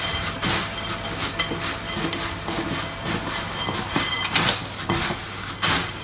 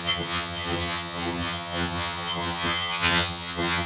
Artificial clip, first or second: second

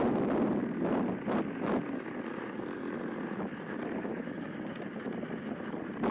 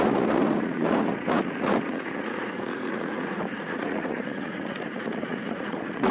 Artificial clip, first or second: second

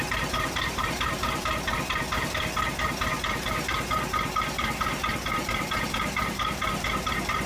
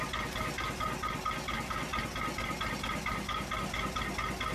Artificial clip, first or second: first